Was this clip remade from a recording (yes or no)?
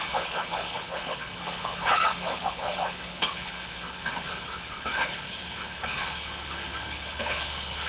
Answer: yes